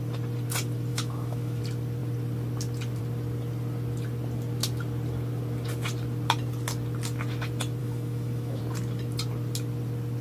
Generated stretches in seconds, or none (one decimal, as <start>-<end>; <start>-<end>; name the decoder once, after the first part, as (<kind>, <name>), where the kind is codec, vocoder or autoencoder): 0.9-1.6 (autoencoder, DAC-VAE); 7.8-8.6